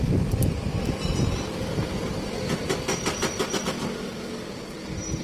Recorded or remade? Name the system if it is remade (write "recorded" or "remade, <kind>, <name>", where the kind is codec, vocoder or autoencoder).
recorded